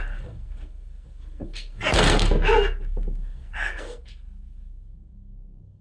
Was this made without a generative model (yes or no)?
no